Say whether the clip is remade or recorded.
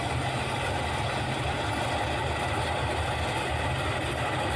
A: recorded